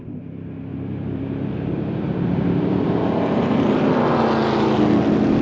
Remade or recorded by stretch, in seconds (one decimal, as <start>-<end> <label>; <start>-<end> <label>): 0.0-0.7 recorded; 0.7-3.9 remade; 3.9-5.4 recorded